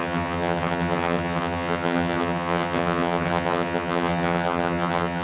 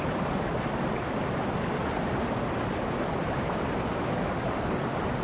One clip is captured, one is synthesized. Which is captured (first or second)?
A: second